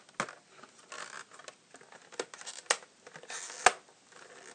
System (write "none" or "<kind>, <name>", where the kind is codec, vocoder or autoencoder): none